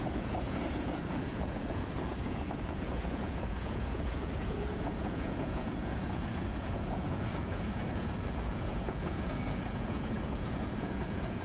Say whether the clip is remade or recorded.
remade